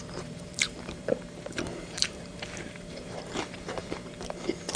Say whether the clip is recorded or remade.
remade